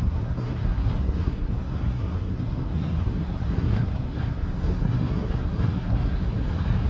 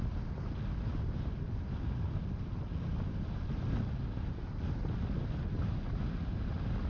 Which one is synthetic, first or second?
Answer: first